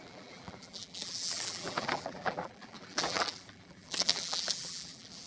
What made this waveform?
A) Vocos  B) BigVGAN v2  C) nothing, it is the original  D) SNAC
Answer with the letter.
B